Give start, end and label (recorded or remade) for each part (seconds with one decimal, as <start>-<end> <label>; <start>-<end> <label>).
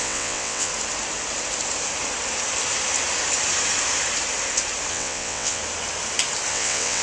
0.0-0.7 remade; 0.7-4.9 recorded; 4.9-5.6 remade; 5.6-6.5 recorded; 6.5-7.0 remade